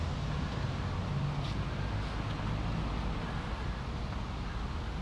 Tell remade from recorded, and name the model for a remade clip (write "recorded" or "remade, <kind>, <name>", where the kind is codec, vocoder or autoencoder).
recorded